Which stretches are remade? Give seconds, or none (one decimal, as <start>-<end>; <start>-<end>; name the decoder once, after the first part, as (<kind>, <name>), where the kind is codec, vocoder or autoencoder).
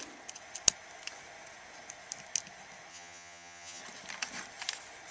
2.9-3.8 (vocoder, HiFi-GAN)